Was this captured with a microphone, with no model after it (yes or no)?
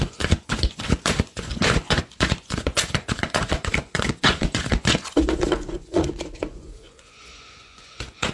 no